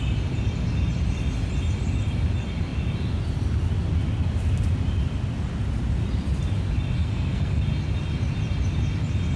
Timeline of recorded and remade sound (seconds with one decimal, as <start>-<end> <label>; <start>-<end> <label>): 0.0-7.0 recorded; 7.0-7.6 remade; 7.6-9.4 recorded